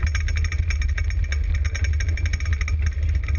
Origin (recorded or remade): recorded